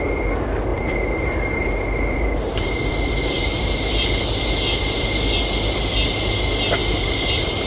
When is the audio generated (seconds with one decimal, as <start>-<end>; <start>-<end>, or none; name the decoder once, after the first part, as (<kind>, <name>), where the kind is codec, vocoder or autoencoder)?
0.7-3.9 (vocoder, BigVGAN v2); 6.8-7.7